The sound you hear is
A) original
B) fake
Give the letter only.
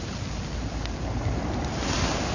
A